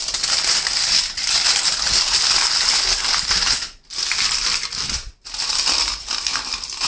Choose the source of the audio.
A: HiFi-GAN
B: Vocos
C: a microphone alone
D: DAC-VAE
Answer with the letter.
C